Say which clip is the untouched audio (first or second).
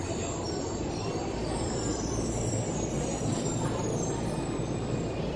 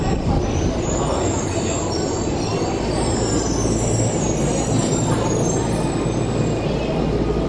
second